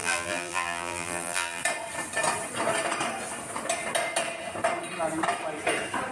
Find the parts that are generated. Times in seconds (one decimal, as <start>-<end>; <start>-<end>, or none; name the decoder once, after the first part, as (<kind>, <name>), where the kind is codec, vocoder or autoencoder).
0.0-1.6 (vocoder, BigVGAN v2)